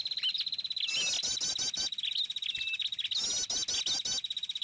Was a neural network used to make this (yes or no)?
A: no